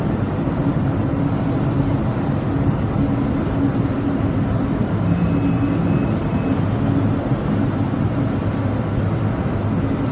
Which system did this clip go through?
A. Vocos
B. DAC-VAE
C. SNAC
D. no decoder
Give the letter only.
D